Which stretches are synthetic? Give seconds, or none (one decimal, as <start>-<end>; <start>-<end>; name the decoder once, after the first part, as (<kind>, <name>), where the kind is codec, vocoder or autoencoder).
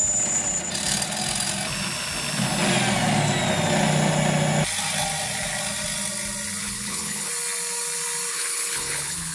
6.6-7.3 (codec, HILCodec); 8.3-9.3